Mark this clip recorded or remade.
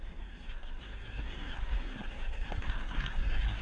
remade